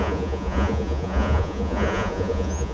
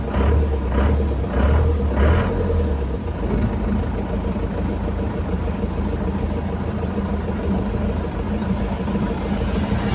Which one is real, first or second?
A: second